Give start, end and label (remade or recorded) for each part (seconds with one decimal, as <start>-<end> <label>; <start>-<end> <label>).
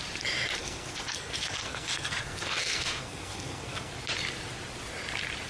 0.0-0.6 recorded; 0.6-3.9 remade; 3.9-5.5 recorded